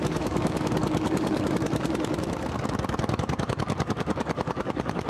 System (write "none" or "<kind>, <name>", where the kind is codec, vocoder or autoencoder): codec, DAC